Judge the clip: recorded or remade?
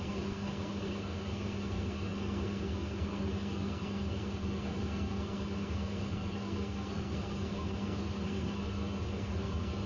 remade